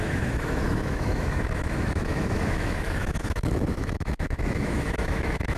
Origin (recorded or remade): remade